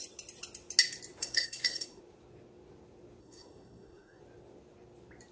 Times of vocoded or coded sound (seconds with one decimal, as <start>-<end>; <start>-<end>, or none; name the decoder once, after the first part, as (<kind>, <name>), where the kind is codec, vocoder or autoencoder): 1.2-2.0 (codec, SNAC); 3.2-4.2